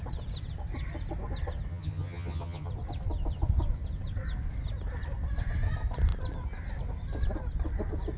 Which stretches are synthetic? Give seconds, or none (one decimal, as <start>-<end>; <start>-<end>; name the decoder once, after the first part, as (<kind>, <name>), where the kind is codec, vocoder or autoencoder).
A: 1.7-2.7 (vocoder, HiFi-GAN)